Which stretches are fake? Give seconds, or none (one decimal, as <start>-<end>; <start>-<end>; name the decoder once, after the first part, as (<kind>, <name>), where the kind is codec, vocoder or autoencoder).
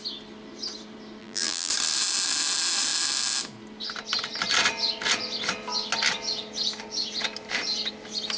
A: 1.2-1.7 (vocoder, BigVGAN v2)